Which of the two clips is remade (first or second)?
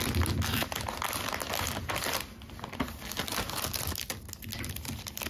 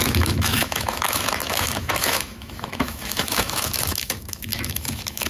second